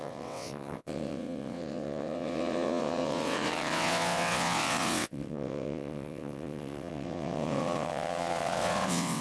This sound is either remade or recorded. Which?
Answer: remade